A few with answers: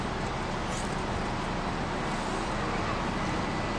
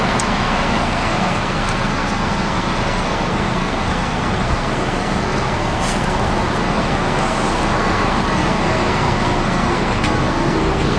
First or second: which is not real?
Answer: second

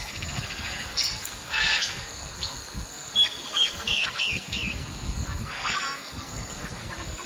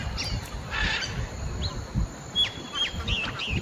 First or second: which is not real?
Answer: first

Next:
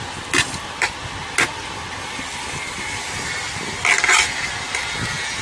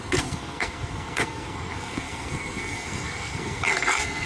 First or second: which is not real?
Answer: second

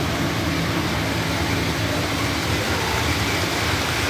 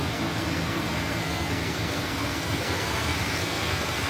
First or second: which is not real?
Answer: second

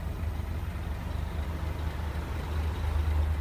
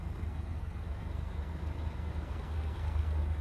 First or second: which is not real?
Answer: second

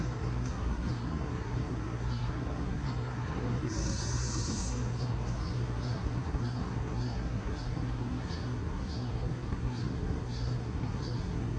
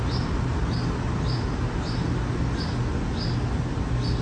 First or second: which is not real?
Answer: first